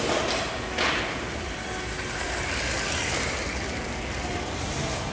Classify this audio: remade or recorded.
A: recorded